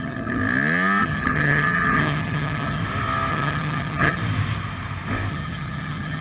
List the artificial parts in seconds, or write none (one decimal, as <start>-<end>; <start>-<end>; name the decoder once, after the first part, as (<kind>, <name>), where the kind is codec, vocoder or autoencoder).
0.0-0.4 (vocoder, HiFi-GAN); 1.0-2.8; 3.3-4.2; 5.3-6.2